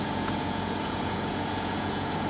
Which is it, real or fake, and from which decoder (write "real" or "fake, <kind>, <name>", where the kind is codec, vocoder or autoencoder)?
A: fake, vocoder, Vocos